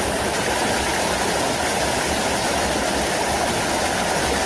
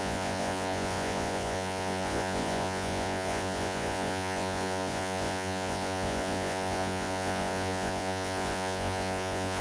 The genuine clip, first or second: first